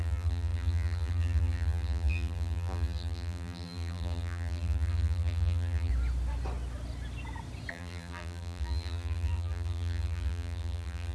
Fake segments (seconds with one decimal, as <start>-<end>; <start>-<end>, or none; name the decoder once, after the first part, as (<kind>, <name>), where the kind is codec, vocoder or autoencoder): 0.0-5.9 (vocoder, BigVGAN v2); 7.7-11.1